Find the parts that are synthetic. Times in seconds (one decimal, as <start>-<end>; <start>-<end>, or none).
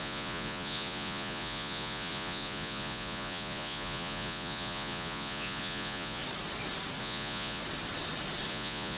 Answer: 0.0-6.2; 7.0-7.6; 8.5-9.0